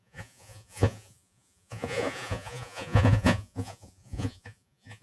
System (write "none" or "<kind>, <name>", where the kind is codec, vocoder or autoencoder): vocoder, Vocos